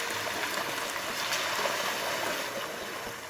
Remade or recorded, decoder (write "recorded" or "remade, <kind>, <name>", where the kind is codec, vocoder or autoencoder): recorded